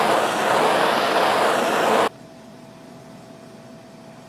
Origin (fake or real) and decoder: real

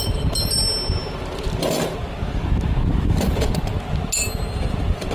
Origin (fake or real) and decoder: real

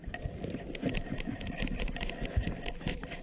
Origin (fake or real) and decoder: real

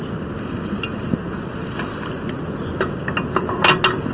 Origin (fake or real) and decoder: real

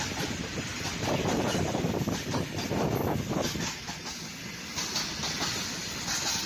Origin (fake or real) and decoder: real